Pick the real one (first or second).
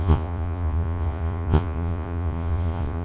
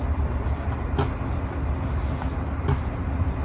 second